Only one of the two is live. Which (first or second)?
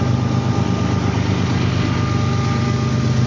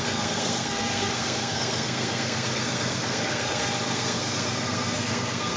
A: first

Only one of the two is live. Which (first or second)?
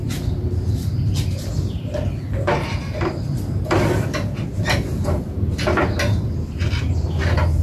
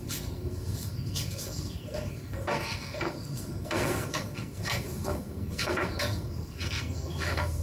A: first